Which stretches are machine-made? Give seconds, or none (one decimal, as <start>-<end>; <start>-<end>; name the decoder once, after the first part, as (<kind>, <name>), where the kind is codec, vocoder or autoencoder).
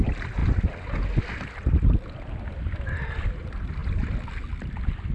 none